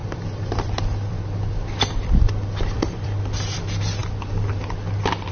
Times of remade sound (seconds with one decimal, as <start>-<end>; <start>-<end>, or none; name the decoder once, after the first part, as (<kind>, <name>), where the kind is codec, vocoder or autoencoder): 0.0-3.2 (vocoder, BigVGAN v2)